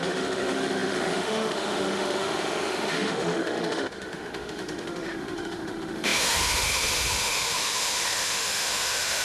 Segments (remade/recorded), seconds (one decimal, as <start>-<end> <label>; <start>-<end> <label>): 0.0-9.2 remade